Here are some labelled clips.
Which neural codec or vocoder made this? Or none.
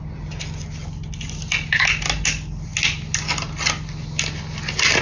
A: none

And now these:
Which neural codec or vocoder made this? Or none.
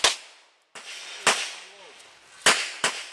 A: none